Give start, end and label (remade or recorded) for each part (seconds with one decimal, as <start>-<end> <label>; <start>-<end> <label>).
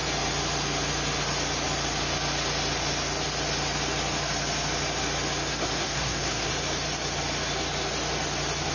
0.0-5.5 recorded; 5.5-6.5 remade; 6.5-8.7 recorded